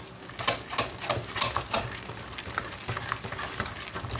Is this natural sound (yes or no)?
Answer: yes